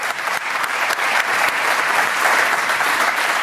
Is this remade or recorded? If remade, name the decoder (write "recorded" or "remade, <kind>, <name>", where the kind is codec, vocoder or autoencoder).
remade, vocoder, BigVGAN v2